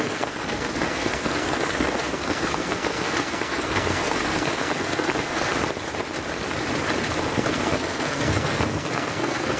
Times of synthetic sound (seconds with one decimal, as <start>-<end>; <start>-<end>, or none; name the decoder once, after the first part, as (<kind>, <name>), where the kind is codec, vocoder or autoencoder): 0.0-5.5 (codec, SNAC); 7.2-9.6